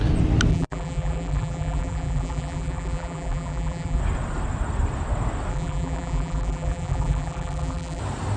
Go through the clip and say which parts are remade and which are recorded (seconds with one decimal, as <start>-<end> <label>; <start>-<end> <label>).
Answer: 0.0-0.5 recorded; 0.5-4.0 remade; 4.0-5.5 recorded; 5.5-8.0 remade; 8.0-8.4 recorded

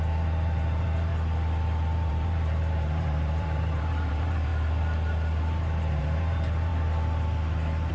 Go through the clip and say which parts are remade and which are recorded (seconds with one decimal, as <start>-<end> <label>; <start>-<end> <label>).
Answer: 0.0-1.1 remade; 1.1-2.1 recorded; 2.1-4.5 remade; 4.5-6.0 recorded; 6.0-6.7 remade; 6.7-7.9 recorded

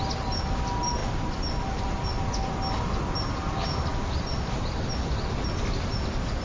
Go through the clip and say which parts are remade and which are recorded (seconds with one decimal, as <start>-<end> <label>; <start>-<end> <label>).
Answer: 0.0-1.0 recorded; 1.0-2.2 remade; 2.2-3.9 recorded; 3.9-5.1 remade; 5.1-6.4 recorded

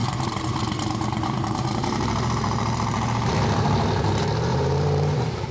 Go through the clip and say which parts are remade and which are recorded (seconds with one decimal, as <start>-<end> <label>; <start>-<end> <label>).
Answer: 0.0-3.3 remade; 3.3-4.5 recorded; 4.5-5.5 remade

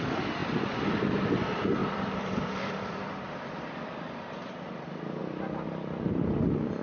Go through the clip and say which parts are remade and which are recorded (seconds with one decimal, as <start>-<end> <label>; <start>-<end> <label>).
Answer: 0.0-1.8 recorded; 1.8-4.6 remade; 4.6-5.2 recorded; 5.2-6.8 remade

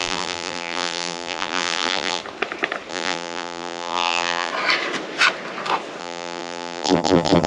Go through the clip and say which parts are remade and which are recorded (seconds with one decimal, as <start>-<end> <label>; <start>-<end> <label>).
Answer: 0.0-2.2 remade; 2.2-2.9 recorded; 2.9-4.5 remade; 4.5-6.0 recorded; 6.0-7.5 remade